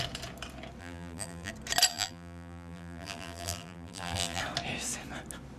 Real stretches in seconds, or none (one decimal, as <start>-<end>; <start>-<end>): 0.0-0.8; 1.5-1.9; 4.4-5.6